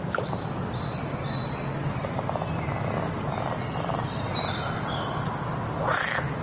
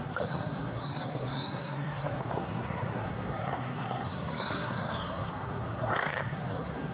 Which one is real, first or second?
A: first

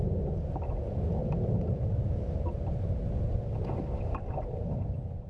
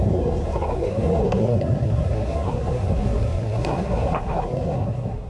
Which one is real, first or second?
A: first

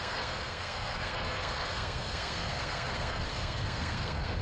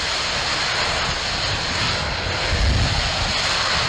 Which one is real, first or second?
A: second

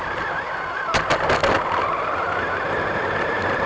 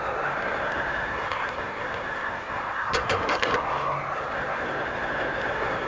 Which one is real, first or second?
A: first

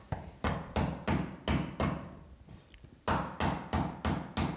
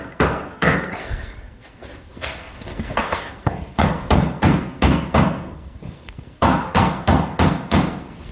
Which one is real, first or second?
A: first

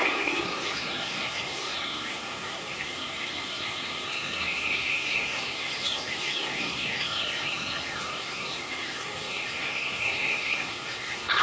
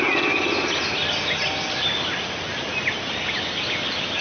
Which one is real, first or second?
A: second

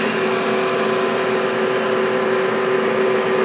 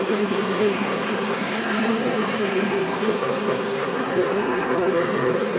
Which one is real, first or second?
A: first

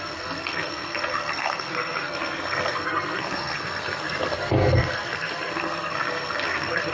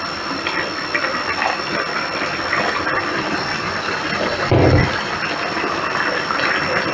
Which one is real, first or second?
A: second